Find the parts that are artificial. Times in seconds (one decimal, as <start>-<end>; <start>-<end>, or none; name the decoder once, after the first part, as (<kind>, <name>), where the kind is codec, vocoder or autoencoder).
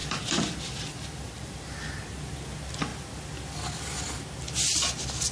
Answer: 2.9-4.2 (vocoder, BigVGAN v2)